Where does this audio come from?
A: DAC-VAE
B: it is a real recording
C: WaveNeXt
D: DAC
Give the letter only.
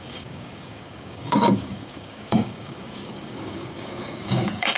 D